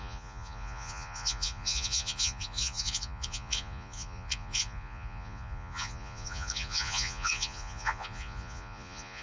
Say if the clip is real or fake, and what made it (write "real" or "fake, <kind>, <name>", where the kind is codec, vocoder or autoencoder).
fake, vocoder, Vocos